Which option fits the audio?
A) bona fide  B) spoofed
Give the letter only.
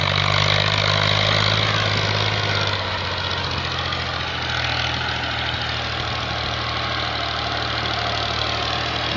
A